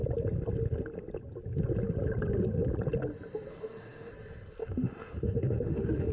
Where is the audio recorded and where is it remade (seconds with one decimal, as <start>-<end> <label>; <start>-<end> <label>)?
0.0-3.5 recorded; 3.5-4.1 remade; 4.1-4.6 recorded; 4.6-6.1 remade